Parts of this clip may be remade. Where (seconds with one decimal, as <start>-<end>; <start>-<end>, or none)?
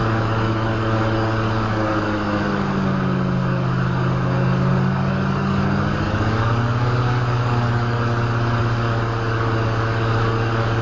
0.0-10.8